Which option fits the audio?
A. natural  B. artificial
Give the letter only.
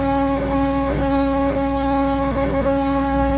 B